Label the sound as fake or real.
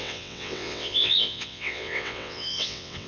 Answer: fake